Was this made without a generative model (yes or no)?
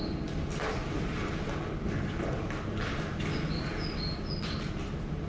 yes